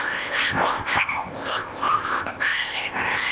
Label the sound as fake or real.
fake